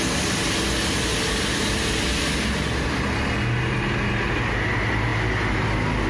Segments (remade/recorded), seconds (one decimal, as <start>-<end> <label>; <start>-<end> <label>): 0.0-6.1 recorded